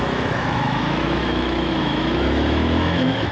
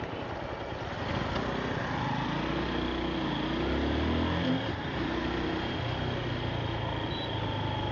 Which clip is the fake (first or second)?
first